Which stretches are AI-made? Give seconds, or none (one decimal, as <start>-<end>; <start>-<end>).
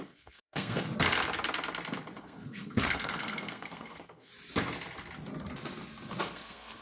0.0-0.9; 2.2-4.3; 6.2-6.8